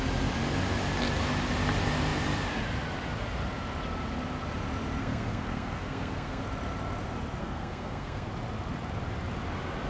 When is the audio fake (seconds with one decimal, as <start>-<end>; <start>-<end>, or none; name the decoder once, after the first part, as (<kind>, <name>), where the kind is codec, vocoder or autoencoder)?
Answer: 5.0-6.4 (codec, SNAC); 7.4-8.3